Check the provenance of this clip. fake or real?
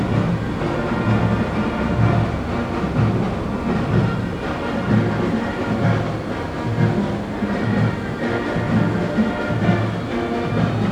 real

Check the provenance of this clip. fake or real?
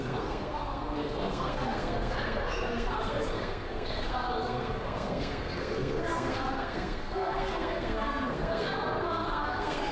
fake